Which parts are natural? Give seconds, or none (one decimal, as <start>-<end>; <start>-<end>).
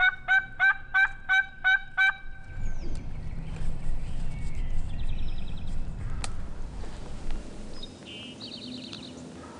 0.0-9.6